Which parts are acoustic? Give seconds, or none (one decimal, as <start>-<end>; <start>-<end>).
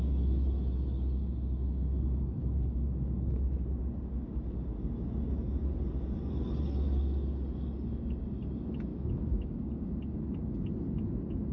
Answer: 0.0-8.9; 9.5-11.5